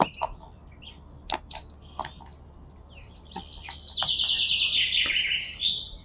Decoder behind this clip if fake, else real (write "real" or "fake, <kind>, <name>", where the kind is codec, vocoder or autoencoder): real